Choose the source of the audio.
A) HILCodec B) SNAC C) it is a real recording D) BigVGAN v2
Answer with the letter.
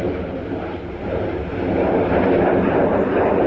C